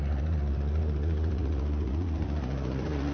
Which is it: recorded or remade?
remade